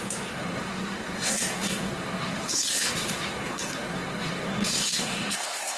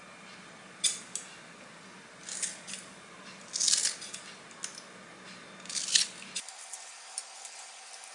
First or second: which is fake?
first